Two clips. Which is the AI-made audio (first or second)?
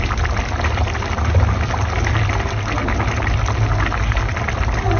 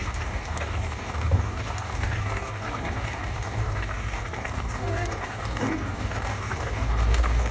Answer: second